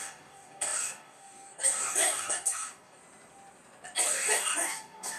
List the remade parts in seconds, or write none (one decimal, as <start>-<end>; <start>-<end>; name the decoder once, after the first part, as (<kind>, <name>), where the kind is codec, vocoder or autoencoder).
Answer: 0.0-3.0 (codec, DAC); 4.1-5.2